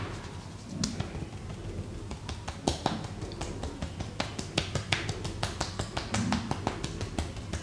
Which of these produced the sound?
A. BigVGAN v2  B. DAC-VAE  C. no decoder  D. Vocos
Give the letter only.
C